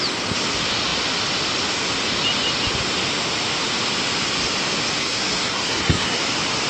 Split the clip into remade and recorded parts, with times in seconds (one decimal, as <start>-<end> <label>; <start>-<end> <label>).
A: 0.0-5.0 recorded; 5.0-6.2 remade; 6.2-6.7 recorded